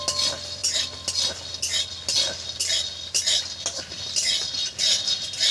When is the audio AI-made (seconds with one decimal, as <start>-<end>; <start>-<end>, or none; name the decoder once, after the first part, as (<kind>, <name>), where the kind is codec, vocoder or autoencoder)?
none